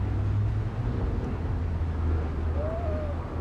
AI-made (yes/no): no